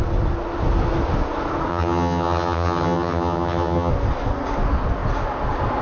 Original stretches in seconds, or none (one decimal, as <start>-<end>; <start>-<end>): 0.0-1.7; 3.9-5.8